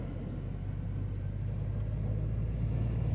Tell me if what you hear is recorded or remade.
recorded